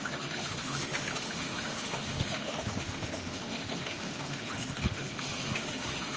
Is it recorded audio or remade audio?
remade